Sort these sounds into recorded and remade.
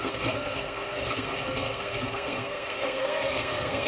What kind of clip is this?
remade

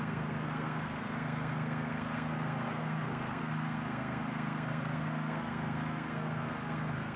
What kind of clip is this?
remade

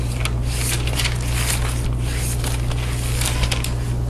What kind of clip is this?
recorded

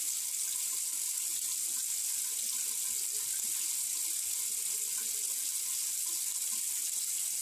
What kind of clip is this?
recorded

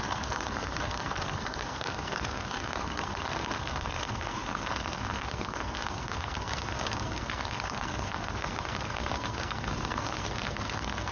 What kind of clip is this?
remade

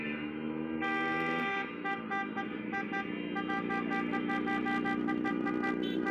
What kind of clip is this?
recorded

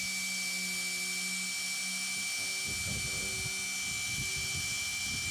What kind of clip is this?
recorded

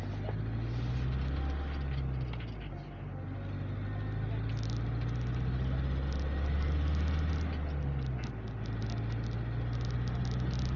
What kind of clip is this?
recorded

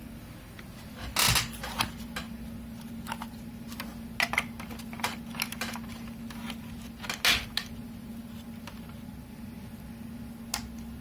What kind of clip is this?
recorded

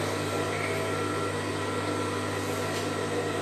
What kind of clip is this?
recorded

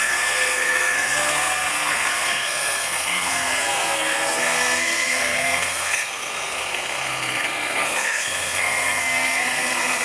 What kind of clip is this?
remade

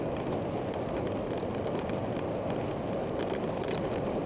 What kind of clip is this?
recorded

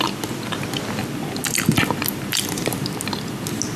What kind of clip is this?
recorded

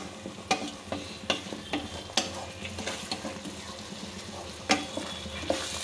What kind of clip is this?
recorded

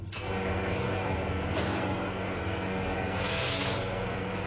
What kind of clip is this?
remade